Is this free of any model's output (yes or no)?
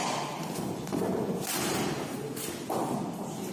no